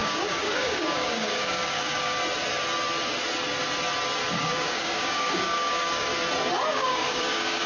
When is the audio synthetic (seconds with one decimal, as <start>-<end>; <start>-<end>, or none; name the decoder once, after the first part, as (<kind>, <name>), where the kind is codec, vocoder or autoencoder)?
0.0-2.2 (codec, DAC); 4.3-6.1; 6.7-7.7